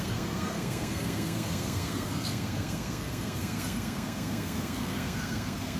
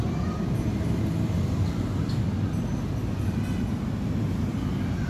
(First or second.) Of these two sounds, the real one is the second